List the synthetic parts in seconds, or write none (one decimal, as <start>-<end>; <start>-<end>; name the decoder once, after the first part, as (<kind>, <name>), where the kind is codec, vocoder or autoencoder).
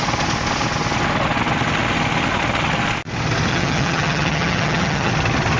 3.5-5.1 (vocoder, HiFi-GAN)